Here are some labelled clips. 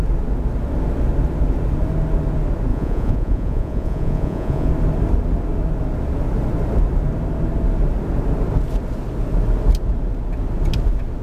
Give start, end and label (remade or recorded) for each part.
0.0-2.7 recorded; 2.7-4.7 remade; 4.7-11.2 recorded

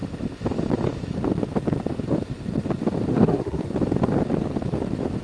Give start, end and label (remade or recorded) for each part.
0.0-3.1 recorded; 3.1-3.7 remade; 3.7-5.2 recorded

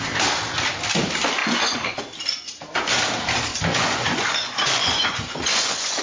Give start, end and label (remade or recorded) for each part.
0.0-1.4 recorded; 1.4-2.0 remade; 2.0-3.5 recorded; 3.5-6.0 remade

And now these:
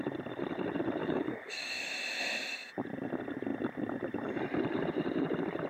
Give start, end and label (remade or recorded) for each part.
0.0-1.0 recorded; 1.0-1.9 remade; 1.9-5.7 recorded